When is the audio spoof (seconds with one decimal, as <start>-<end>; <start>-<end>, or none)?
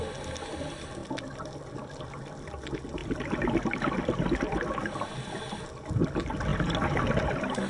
none